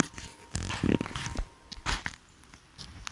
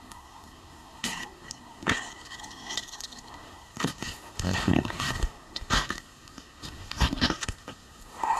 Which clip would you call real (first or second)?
first